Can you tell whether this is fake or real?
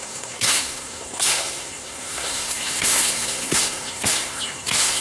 fake